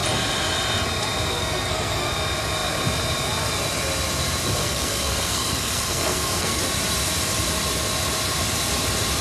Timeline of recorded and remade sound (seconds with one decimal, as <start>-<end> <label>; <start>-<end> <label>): 0.0-1.3 recorded; 1.3-2.1 remade; 2.1-4.6 recorded; 4.6-6.6 remade; 6.6-9.2 recorded